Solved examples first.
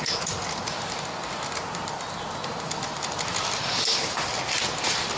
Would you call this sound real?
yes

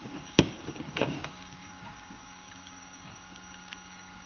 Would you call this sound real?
no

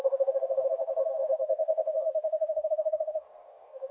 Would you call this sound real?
no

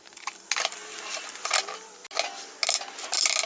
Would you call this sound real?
yes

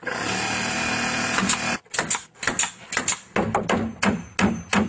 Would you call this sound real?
yes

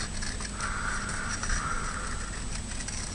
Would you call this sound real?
yes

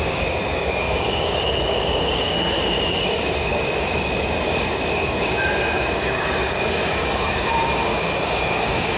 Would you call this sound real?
no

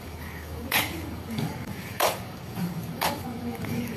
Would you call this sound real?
no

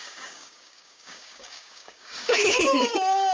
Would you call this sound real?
no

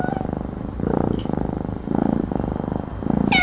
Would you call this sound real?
yes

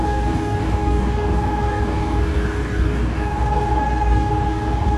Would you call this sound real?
no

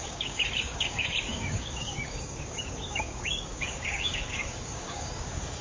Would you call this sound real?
no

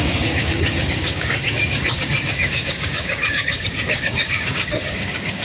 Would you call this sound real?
no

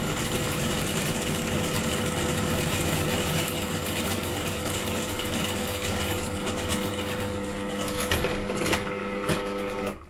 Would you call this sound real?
no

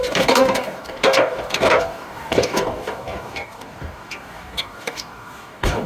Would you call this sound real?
no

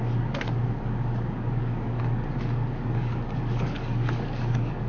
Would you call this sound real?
no